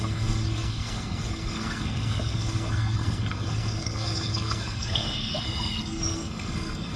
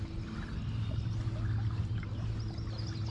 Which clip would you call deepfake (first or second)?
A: first